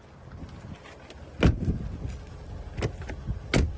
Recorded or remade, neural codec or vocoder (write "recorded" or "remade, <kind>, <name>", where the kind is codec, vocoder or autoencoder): recorded